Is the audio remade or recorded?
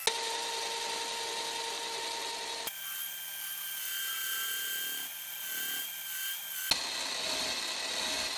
recorded